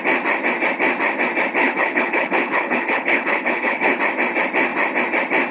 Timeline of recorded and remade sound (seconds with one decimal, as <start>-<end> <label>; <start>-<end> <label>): 0.0-1.6 recorded; 1.6-4.0 remade; 4.0-5.5 recorded